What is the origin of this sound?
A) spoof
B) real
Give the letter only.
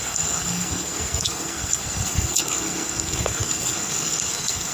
A